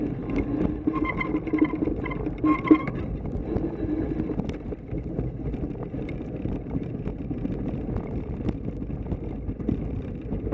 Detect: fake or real real